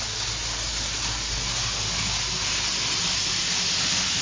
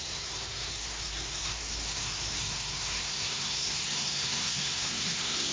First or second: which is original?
first